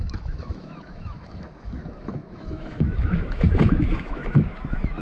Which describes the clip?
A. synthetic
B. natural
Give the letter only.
A